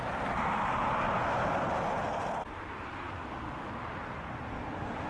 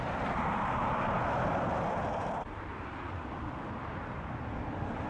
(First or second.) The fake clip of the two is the second